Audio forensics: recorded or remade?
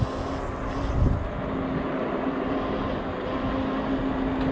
recorded